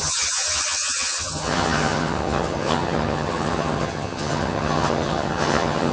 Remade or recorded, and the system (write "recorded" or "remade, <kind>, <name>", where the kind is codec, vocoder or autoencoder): remade, vocoder, HiFi-GAN